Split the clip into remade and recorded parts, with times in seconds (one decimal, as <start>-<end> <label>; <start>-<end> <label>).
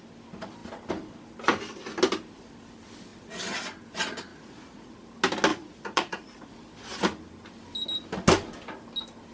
0.0-4.3 recorded; 4.3-4.9 remade; 4.9-5.5 recorded; 5.5-6.5 remade; 6.5-9.3 recorded